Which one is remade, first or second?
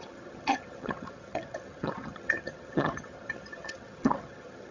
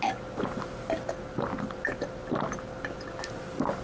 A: first